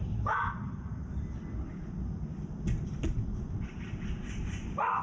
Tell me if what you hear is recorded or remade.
recorded